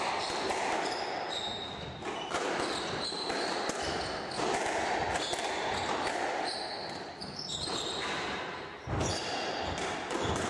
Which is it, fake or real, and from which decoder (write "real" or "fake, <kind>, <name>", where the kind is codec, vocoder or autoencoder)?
real